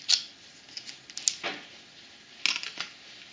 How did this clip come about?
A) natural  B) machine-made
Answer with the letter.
A